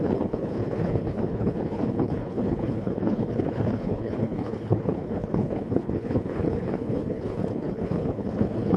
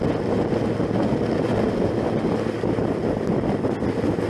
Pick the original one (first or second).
second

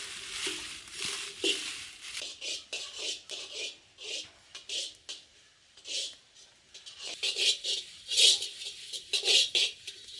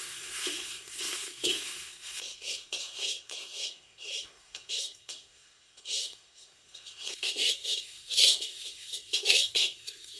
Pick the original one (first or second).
first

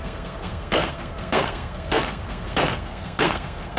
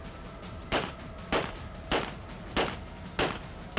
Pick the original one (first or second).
second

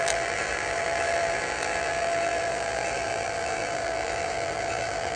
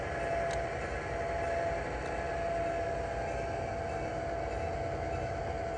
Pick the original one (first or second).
second